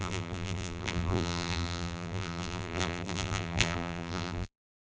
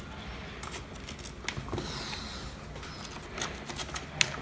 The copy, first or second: first